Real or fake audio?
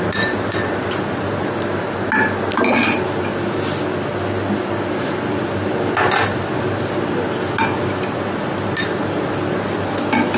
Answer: real